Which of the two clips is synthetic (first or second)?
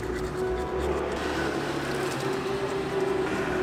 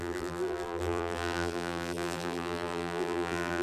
second